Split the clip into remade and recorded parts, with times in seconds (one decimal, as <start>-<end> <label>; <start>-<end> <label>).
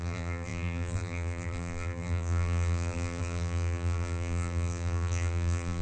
0.0-5.8 remade